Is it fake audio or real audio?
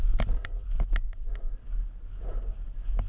real